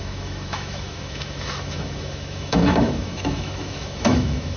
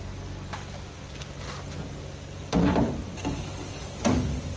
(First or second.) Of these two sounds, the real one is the second